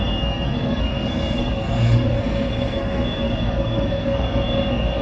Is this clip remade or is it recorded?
remade